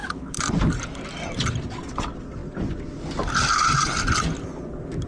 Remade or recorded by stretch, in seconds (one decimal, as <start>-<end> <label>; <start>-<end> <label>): 0.0-5.1 recorded